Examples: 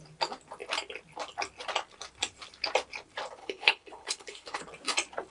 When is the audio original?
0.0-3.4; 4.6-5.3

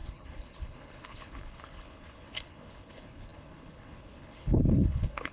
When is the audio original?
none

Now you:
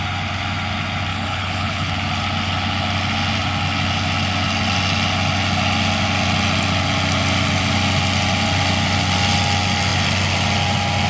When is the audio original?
0.0-1.1; 1.9-11.1

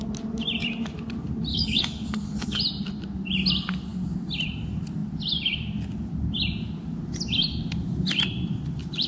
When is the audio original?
0.0-1.5; 2.6-9.1